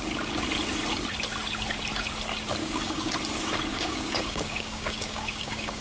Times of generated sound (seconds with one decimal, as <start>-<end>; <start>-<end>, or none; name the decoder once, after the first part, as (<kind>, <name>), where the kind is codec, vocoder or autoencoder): 2.6-3.1 (codec, DAC); 3.7-5.8

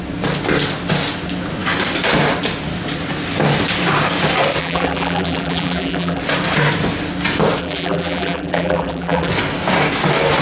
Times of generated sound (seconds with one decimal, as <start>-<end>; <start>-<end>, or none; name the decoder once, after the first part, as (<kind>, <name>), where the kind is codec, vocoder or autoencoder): 4.6-6.2 (vocoder, BigVGAN v2); 7.6-9.3

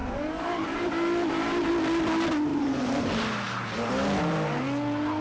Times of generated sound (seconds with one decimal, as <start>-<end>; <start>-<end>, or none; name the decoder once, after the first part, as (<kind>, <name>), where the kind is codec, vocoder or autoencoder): 0.0-1.7 (vocoder, BigVGAN v2); 2.5-3.9

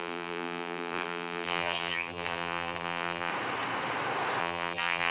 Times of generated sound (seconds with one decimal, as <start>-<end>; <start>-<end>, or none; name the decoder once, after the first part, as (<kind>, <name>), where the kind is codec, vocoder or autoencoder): 0.0-3.3 (vocoder, BigVGAN v2); 4.4-5.1

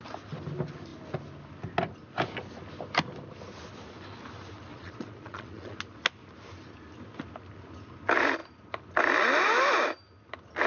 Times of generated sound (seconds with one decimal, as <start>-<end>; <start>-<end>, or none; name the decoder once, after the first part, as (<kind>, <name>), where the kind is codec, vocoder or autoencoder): 4.7-5.8 (vocoder, Vocos)

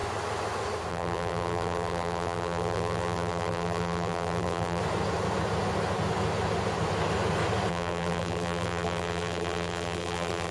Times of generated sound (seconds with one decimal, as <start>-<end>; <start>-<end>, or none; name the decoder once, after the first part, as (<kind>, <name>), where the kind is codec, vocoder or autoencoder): 0.9-4.8 (vocoder, BigVGAN v2); 7.7-10.5

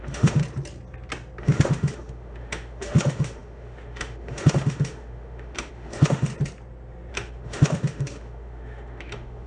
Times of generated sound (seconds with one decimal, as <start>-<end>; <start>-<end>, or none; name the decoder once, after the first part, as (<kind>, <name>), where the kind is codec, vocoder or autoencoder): 0.0-0.4 (autoencoder, DAC-VAE); 1.4-6.3; 7.1-9.5

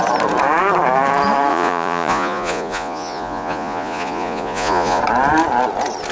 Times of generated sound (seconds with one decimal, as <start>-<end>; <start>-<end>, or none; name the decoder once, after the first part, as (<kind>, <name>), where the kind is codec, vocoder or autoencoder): 1.5-5.0 (vocoder, Vocos)